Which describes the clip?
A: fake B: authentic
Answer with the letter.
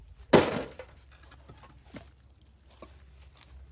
B